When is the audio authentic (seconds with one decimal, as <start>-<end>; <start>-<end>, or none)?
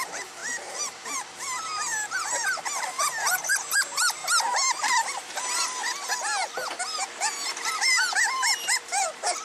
4.2-4.8; 5.8-7.7